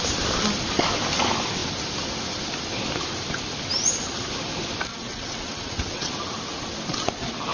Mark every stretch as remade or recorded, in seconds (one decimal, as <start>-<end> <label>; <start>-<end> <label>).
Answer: 0.0-4.9 recorded; 4.9-6.1 remade; 6.1-7.5 recorded